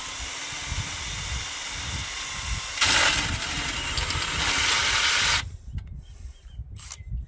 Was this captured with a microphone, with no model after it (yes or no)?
yes